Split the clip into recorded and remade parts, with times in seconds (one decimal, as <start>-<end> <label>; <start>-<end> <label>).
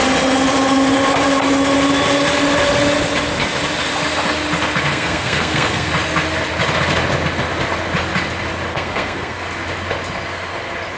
0.0-4.9 recorded; 4.9-5.9 remade; 5.9-8.7 recorded; 8.7-9.4 remade; 9.4-11.0 recorded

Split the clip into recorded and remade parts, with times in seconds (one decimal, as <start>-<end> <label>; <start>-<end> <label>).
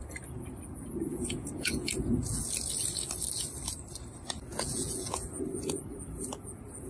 0.0-1.1 recorded; 1.1-2.4 remade; 2.4-4.5 recorded; 4.5-5.4 remade; 5.4-6.9 recorded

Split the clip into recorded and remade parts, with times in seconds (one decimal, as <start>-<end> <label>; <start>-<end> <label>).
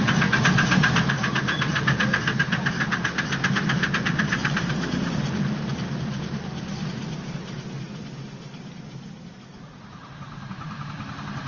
0.0-4.4 recorded; 4.4-7.0 remade; 7.0-9.5 recorded; 9.5-11.1 remade; 11.1-11.5 recorded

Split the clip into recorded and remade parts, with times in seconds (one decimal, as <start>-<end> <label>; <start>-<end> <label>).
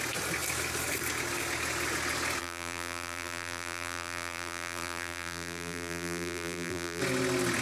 0.0-2.4 recorded; 2.4-7.0 remade; 7.0-7.6 recorded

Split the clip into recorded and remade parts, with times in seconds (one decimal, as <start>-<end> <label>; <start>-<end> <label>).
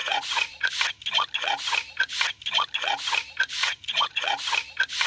0.0-0.7 remade; 0.7-3.6 recorded; 3.6-4.2 remade; 4.2-5.1 recorded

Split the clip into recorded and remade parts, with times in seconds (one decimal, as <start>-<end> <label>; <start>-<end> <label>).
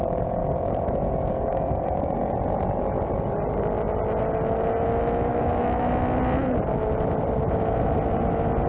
0.0-0.4 recorded; 0.4-2.3 remade; 2.3-5.3 recorded; 5.3-5.9 remade; 5.9-8.7 recorded